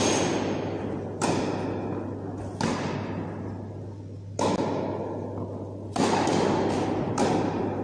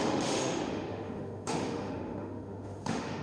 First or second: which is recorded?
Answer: first